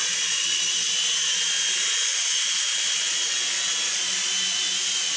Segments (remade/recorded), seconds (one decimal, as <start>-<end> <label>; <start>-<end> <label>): 0.0-0.6 remade; 0.6-2.1 recorded; 2.1-3.0 remade; 3.0-5.2 recorded